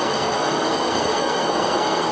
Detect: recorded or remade remade